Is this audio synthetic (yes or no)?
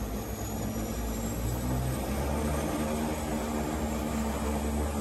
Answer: no